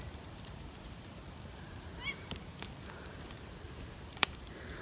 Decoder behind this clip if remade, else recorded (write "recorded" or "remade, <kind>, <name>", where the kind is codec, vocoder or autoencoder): remade, vocoder, BigVGAN v2